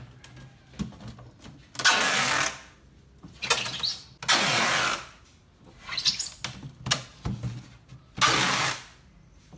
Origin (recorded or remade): recorded